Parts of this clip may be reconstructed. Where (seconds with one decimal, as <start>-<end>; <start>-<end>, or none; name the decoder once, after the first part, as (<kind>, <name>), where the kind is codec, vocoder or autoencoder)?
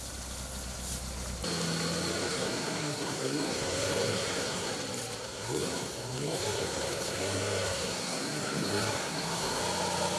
2.2-4.7 (codec, SNAC); 5.2-9.6